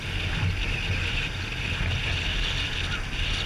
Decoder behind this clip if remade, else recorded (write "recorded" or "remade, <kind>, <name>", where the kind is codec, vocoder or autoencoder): recorded